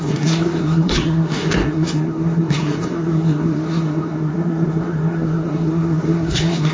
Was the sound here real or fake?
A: fake